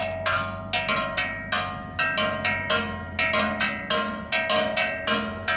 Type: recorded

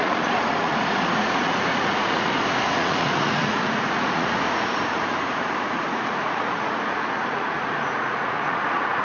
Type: remade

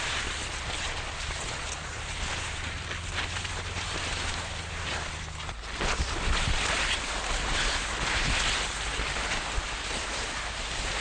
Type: recorded